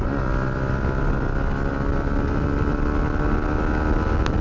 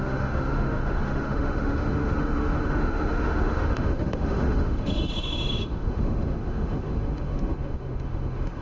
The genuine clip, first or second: first